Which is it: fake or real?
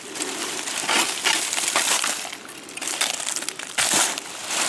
fake